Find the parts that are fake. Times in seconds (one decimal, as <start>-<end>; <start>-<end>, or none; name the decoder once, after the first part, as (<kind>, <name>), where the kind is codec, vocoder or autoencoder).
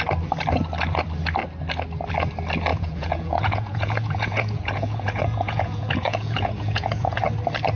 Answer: 2.7-7.2 (vocoder, Vocos)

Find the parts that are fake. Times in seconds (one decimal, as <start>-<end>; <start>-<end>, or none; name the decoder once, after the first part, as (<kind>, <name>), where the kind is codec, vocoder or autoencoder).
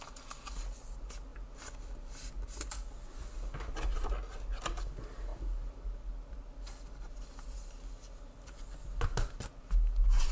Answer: none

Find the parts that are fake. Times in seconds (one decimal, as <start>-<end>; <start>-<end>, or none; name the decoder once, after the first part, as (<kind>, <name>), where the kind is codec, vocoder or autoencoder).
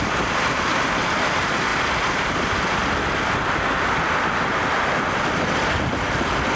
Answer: none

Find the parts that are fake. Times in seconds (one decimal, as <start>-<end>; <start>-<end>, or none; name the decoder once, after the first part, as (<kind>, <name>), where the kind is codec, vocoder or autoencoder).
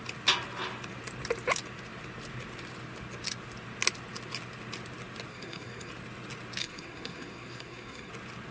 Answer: 5.3-5.9 (codec, SNAC); 6.6-8.1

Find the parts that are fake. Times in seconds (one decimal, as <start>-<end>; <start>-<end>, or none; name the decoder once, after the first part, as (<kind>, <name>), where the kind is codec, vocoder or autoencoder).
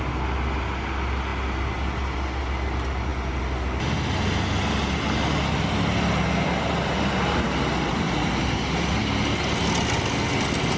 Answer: none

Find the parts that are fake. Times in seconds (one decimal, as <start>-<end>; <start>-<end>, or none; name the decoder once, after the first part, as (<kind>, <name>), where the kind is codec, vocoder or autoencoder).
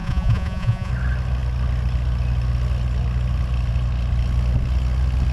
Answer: 0.0-0.9 (vocoder, Vocos)